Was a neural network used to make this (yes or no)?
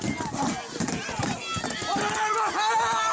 no